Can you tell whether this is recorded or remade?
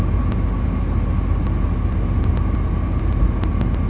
recorded